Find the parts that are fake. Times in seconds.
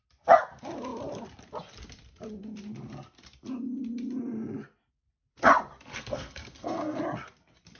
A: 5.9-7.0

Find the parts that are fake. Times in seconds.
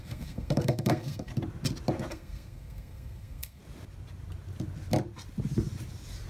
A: 0.0-1.3; 2.1-3.6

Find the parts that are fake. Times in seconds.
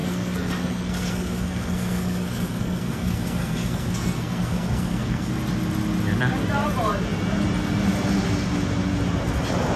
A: 0.0-5.3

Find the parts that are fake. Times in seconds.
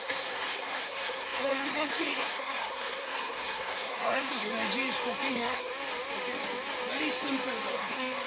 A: 0.0-4.5; 5.3-5.7; 7.7-8.3